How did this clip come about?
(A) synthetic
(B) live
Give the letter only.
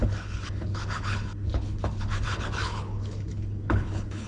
A